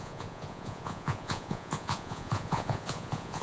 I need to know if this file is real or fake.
fake